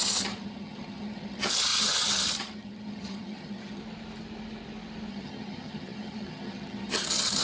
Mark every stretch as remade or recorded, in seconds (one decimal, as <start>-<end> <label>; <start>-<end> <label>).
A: 0.0-3.8 remade; 3.8-5.1 recorded; 5.1-7.4 remade